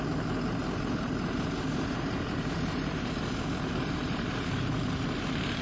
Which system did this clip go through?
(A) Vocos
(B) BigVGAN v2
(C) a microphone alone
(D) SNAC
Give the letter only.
B